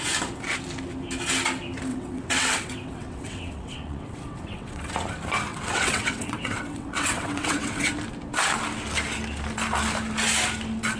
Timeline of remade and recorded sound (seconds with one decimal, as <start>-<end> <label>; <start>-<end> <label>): 0.0-1.9 recorded; 1.9-4.9 remade; 4.9-5.5 recorded; 5.5-7.9 remade; 7.9-11.0 recorded